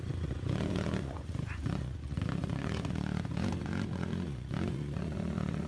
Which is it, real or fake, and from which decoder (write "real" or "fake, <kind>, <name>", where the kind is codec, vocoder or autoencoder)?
fake, vocoder, Vocos